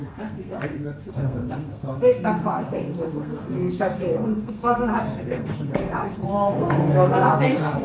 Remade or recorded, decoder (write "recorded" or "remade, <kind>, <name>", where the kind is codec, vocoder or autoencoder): remade, codec, SNAC